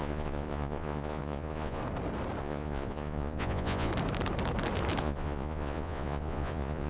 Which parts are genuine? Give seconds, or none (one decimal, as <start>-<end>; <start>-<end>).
1.8-2.4; 3.9-5.0

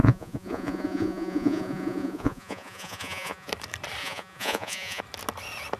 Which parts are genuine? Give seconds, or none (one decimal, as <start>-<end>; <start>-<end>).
3.5-4.0; 5.0-5.8